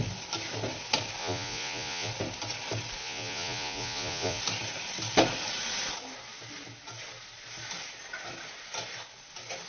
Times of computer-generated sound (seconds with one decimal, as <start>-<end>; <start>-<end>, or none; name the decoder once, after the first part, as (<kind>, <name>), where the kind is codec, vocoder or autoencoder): 1.2-2.1 (vocoder, Vocos); 3.0-4.4